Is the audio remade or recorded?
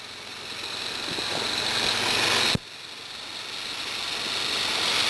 recorded